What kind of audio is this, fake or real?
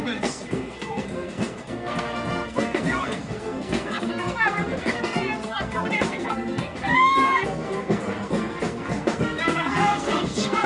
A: fake